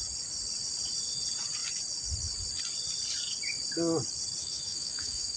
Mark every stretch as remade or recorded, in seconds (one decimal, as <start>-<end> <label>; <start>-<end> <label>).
0.0-4.4 recorded; 4.4-5.4 remade